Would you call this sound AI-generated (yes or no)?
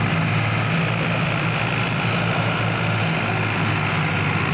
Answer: no